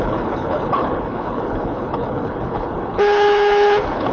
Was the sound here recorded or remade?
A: remade